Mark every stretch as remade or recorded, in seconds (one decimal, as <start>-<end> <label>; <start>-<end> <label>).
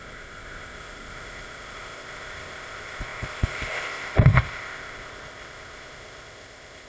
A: 0.0-6.9 remade